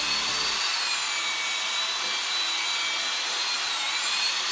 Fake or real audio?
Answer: real